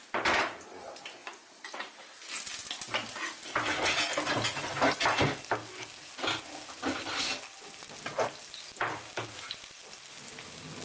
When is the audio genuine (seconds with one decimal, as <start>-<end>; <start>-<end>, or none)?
0.0-10.8